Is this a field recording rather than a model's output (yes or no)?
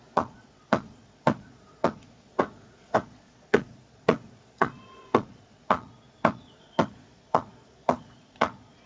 no